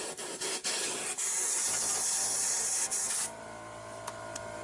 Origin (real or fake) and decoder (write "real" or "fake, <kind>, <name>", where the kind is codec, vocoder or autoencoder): real